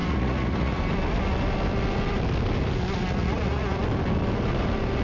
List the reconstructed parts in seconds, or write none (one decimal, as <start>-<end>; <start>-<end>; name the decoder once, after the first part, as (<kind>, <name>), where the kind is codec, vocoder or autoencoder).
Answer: 0.0-0.8 (vocoder, Vocos); 3.2-3.8